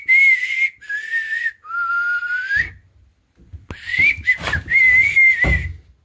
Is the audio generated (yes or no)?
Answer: no